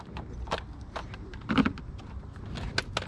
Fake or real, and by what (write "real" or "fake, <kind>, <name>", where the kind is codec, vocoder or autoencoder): real